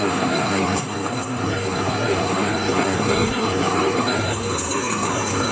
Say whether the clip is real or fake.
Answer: fake